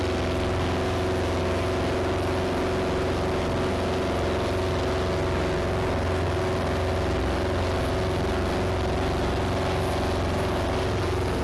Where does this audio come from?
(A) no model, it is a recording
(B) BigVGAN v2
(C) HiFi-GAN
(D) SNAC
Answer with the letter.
A